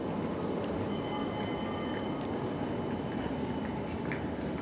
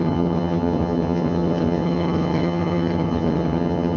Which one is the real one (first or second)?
first